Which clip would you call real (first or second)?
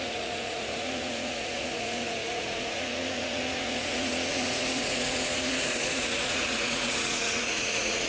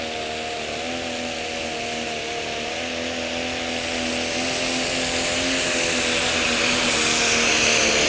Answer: second